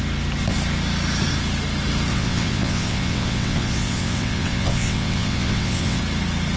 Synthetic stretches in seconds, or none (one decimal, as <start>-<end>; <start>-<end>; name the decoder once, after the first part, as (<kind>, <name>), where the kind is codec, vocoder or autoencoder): 2.1-6.0 (vocoder, WaveNeXt)